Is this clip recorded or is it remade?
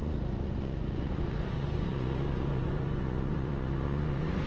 remade